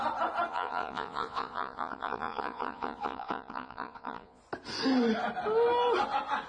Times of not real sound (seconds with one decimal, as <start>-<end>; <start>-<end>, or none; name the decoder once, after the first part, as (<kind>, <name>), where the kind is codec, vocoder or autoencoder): 0.5-4.4 (vocoder, Vocos)